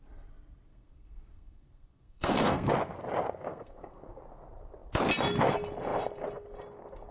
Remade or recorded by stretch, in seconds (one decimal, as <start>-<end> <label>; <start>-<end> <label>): 0.0-0.7 recorded; 0.7-2.7 remade; 2.7-3.5 recorded; 3.5-4.2 remade; 4.2-7.1 recorded